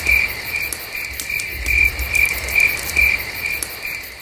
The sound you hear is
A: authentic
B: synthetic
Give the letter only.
B